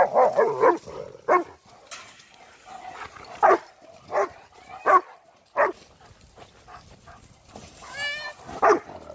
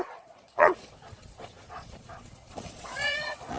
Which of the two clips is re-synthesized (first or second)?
second